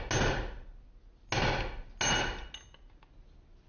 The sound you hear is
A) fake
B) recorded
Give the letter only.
B